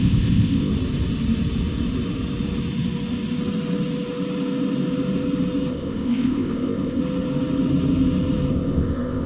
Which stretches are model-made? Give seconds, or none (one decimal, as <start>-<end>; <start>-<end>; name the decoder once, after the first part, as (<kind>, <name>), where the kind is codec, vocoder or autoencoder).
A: 0.0-0.7 (codec, ZipCodec); 5.7-7.0; 8.5-9.3